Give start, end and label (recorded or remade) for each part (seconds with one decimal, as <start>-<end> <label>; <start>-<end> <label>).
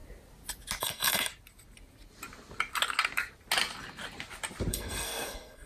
0.0-0.8 recorded; 0.8-1.3 remade; 1.3-4.7 recorded; 4.7-5.7 remade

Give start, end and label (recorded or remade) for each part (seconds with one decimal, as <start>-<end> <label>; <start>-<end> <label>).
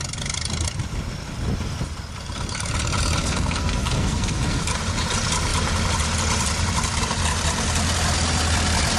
0.0-3.2 recorded; 3.2-4.6 remade; 4.6-9.0 recorded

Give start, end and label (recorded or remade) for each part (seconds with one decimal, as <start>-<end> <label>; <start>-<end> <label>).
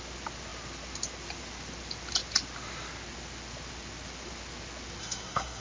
0.0-5.0 recorded; 5.0-5.6 remade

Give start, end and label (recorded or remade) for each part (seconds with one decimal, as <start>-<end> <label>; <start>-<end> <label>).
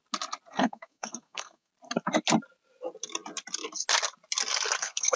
0.0-0.5 recorded; 0.5-1.7 remade; 1.7-4.8 recorded; 4.8-5.2 remade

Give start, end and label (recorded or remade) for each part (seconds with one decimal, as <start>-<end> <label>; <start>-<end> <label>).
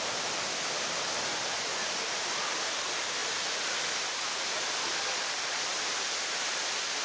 0.0-7.0 recorded